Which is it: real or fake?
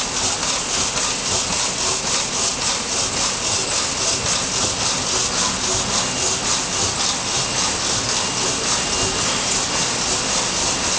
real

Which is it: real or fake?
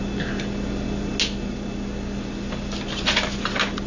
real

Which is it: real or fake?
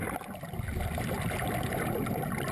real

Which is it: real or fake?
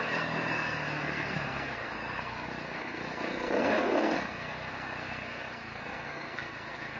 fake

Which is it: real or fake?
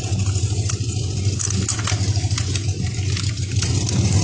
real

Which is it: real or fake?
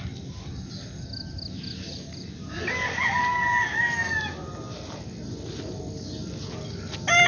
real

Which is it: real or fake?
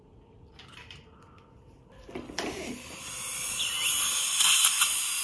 real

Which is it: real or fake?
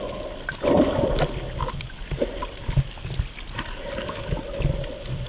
real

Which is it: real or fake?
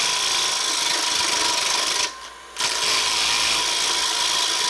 real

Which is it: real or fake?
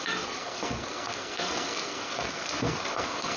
fake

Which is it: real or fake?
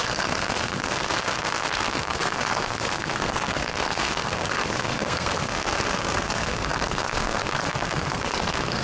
fake